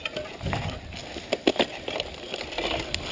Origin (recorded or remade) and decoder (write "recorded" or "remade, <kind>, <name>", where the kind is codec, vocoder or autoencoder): recorded